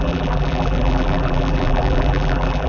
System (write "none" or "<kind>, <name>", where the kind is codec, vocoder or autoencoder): vocoder, BigVGAN v2